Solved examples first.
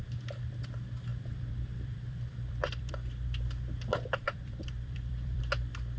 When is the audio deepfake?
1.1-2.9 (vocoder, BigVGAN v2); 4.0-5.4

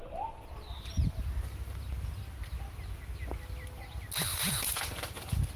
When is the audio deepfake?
4.3-4.9 (vocoder, Vocos)

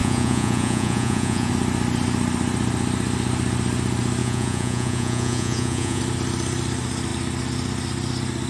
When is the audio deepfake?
0.0-1.5 (vocoder, Vocos); 4.2-6.0

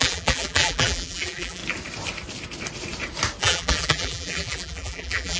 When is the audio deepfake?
0.0-1.6 (vocoder, BigVGAN v2); 3.4-5.4

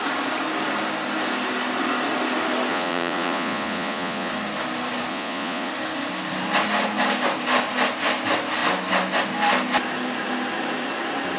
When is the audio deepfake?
2.7-4.3 (vocoder, Vocos); 5.1-5.7

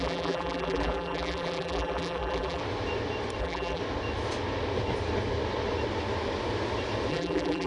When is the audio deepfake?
0.0-2.6 (vocoder, BigVGAN v2); 3.4-3.8; 7.1-7.7